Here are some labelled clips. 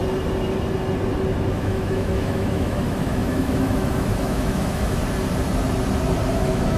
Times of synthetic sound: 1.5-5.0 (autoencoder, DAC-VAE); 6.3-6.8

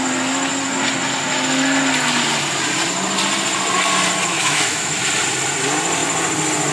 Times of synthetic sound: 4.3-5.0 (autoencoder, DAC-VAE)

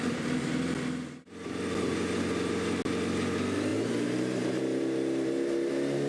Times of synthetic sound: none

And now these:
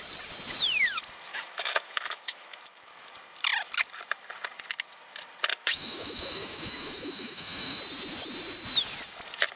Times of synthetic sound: 1.3-3.1 (autoencoder, DAC-VAE); 5.5-7.8

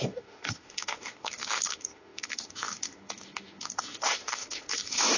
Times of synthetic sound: 0.0-5.2 (autoencoder, DAC-VAE)

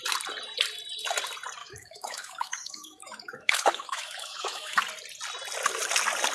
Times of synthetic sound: 1.6-4.8 (autoencoder, DAC-VAE)

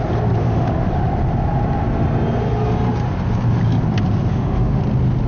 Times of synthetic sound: 0.4-0.9 (autoencoder, DAC-VAE); 4.3-4.8